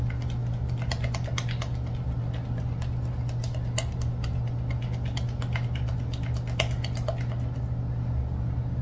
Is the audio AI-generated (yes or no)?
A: no